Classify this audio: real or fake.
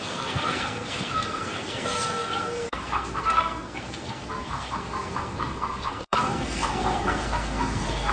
fake